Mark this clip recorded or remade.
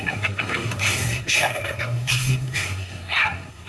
remade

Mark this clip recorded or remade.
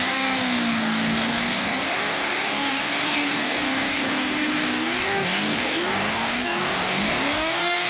remade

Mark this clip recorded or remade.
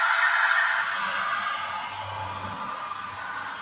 recorded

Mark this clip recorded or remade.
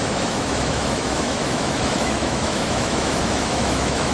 remade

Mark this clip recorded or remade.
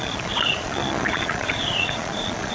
remade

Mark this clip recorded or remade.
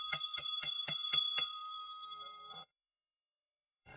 remade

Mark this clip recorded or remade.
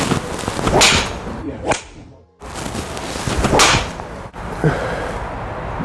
recorded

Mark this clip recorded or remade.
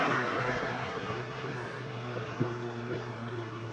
remade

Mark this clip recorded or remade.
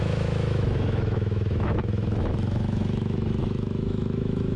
remade